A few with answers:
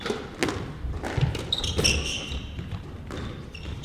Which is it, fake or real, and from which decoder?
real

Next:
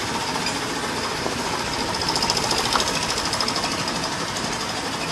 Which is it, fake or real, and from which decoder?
real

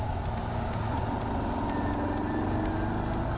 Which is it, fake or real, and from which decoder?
real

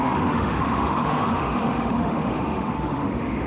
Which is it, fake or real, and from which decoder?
fake, autoencoder, DAC-VAE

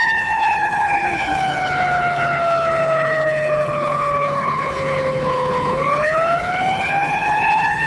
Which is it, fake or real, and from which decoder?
fake, codec, HILCodec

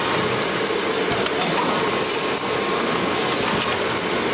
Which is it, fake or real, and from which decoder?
fake, vocoder, BigVGAN v2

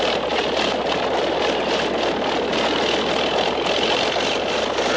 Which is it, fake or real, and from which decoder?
real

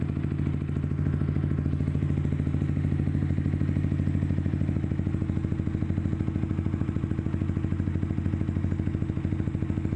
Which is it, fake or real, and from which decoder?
real